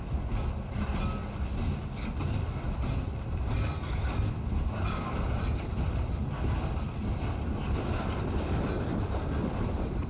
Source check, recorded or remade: recorded